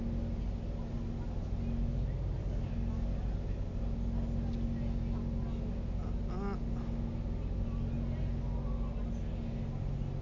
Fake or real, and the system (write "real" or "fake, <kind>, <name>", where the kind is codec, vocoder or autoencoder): real